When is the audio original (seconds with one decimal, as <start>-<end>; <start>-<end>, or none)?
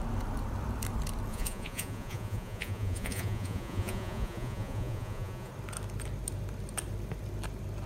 0.0-1.3; 5.5-7.9